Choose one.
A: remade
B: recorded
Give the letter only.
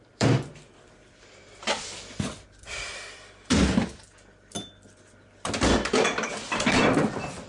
A